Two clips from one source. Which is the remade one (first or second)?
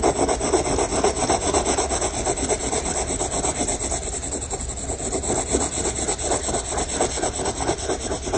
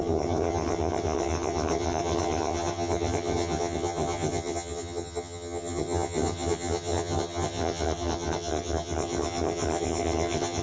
second